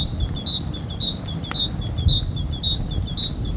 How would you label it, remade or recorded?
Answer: recorded